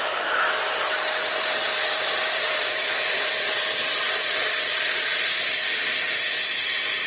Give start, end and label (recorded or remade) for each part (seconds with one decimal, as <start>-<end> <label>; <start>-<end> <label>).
0.0-1.2 recorded; 1.2-5.5 remade; 5.5-7.1 recorded

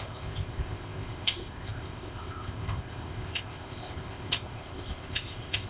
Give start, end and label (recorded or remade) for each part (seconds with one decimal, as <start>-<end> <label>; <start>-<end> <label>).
0.0-5.7 remade

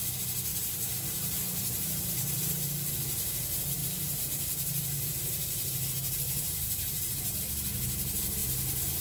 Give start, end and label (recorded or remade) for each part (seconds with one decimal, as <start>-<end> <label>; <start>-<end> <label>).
0.0-0.5 recorded; 0.5-2.1 remade; 2.1-3.8 recorded; 3.8-7.5 remade; 7.5-9.0 recorded